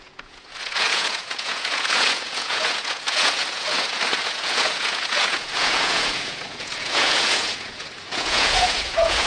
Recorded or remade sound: remade